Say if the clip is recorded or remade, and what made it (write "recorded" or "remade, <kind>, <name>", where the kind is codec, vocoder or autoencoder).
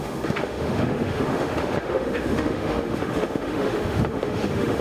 remade, autoencoder, DAC-VAE